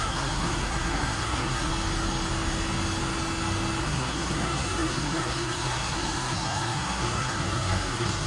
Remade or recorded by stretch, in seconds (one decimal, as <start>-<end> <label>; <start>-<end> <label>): 0.0-1.7 remade; 1.7-3.8 recorded; 3.8-8.3 remade